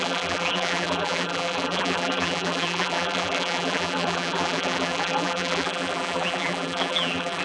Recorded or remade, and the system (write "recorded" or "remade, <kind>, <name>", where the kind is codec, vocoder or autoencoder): remade, vocoder, BigVGAN v2